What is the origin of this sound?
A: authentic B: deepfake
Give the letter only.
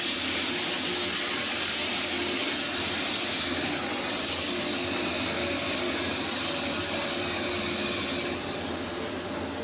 A